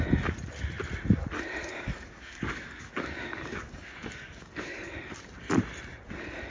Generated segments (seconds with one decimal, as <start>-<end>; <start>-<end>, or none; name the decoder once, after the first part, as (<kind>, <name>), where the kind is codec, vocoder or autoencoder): 1.6-4.9 (codec, DAC)